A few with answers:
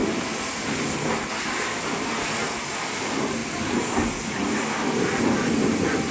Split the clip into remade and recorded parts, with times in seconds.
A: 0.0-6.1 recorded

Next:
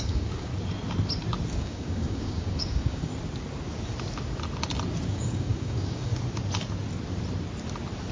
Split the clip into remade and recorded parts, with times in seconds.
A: 0.0-0.5 remade; 0.5-1.5 recorded; 1.5-3.1 remade; 3.1-5.1 recorded; 5.1-6.1 remade; 6.1-8.1 recorded

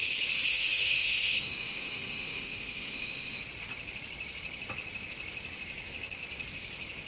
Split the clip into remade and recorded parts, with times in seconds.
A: 0.0-0.5 recorded; 0.5-3.4 remade; 3.4-7.1 recorded

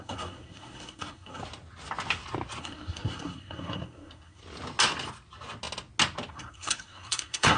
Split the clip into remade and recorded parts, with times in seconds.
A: 0.0-1.4 remade; 1.4-2.6 recorded; 2.6-4.4 remade; 4.4-6.3 recorded; 6.3-7.6 remade

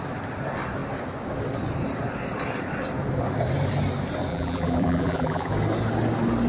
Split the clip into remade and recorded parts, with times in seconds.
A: 0.0-4.3 recorded; 4.3-5.5 remade; 5.5-6.5 recorded